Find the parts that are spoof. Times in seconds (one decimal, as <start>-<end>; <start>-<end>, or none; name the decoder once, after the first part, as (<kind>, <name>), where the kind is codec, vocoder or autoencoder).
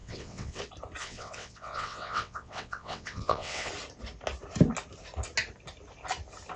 0.0-0.6 (vocoder, WaveNeXt); 1.0-3.7